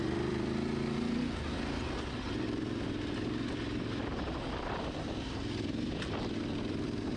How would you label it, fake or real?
fake